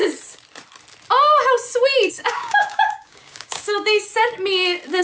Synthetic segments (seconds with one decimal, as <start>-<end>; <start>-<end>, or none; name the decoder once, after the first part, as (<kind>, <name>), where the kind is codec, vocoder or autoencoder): 2.1-4.1 (codec, DAC)